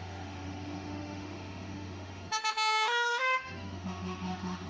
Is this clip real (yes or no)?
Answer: no